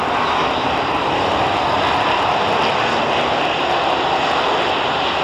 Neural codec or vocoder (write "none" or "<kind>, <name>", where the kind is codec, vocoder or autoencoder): none